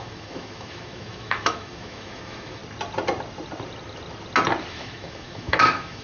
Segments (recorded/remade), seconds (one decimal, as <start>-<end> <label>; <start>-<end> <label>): 0.0-2.6 remade; 2.6-4.7 recorded; 4.7-6.0 remade